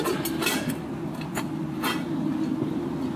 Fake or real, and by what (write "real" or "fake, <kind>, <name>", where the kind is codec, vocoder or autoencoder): real